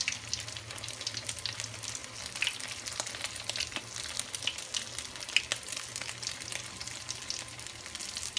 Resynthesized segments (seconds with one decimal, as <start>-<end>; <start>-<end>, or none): none